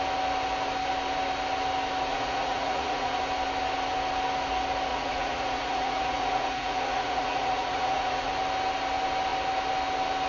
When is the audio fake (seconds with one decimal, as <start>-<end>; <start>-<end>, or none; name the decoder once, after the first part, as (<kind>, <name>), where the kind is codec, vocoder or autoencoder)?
2.1-3.2 (vocoder, Vocos); 4.9-8.3